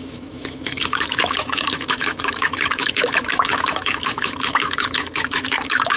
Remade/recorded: remade